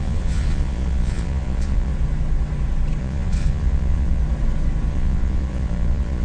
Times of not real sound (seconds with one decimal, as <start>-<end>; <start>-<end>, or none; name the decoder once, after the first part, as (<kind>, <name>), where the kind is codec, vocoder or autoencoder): 0.0-1.9 (vocoder, Vocos); 3.0-4.2; 4.9-6.2

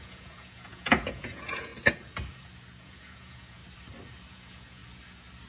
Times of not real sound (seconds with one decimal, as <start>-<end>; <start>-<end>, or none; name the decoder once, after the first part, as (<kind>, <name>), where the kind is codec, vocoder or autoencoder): 0.0-1.7 (vocoder, Vocos); 2.8-3.6; 4.3-4.8

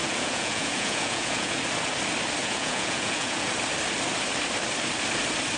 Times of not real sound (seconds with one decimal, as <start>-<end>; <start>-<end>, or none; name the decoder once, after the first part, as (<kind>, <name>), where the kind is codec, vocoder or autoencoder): 0.0-1.6 (vocoder, Vocos); 2.4-3.5

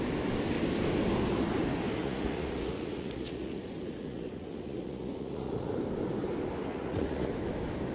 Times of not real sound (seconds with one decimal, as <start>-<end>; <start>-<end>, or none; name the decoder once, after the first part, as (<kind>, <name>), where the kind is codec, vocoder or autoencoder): 2.0-5.7 (vocoder, Vocos); 6.7-7.3

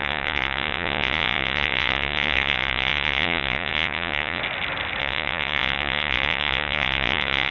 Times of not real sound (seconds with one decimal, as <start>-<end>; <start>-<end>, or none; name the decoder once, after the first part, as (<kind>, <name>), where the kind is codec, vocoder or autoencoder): 0.0-4.4 (vocoder, Vocos); 5.0-7.5

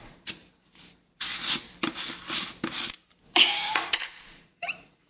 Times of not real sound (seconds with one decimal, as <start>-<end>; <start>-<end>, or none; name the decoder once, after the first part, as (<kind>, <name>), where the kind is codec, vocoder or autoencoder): 0.0-0.4 (vocoder, Vocos); 3.3-5.1

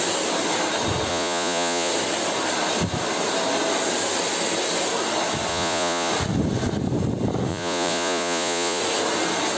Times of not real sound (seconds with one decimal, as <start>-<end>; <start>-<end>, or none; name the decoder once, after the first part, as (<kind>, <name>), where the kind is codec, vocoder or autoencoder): 1.1-1.9 (vocoder, Vocos); 5.5-6.1; 7.5-8.8

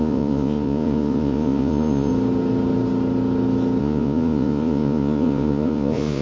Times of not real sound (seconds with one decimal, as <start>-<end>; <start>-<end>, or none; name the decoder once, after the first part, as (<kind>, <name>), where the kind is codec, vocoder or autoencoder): 0.0-2.1 (vocoder, Vocos); 3.8-6.2